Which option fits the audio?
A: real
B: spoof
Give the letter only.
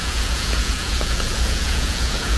B